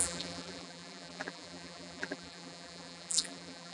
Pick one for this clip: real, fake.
fake